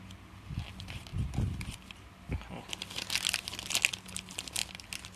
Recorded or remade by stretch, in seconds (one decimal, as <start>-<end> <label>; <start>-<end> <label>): 0.0-5.2 recorded